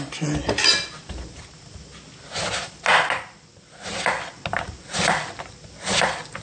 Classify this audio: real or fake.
real